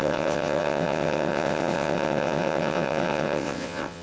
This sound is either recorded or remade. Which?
remade